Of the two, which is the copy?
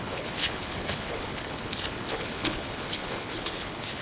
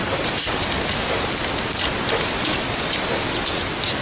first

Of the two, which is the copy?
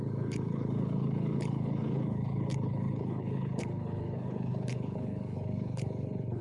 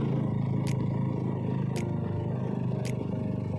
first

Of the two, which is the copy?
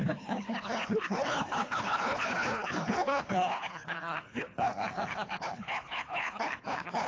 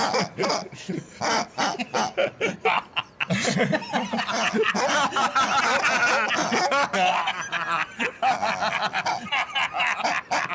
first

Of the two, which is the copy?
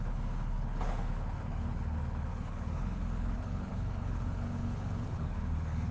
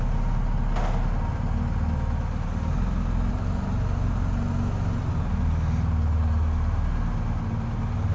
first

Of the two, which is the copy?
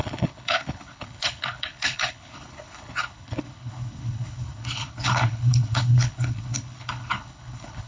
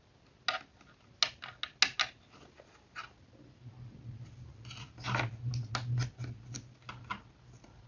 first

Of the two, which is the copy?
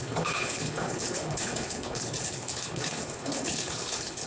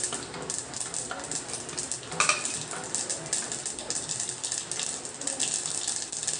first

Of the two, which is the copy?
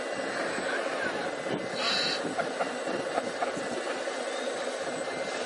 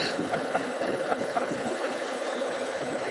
second